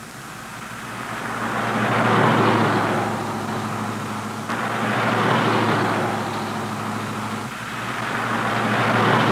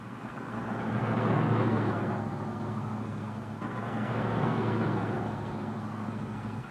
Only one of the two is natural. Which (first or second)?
first